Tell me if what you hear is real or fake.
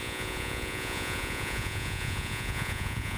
fake